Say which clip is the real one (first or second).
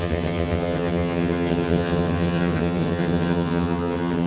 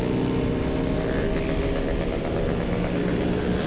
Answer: second